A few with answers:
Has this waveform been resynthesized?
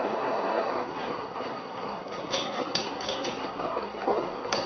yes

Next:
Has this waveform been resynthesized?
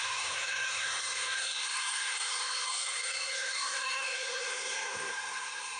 yes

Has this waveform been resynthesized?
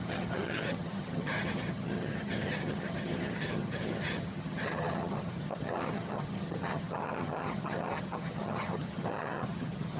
yes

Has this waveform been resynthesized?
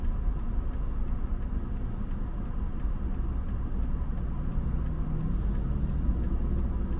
no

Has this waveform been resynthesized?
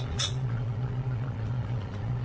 yes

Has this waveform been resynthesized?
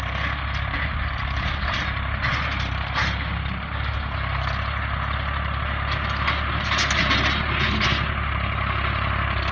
no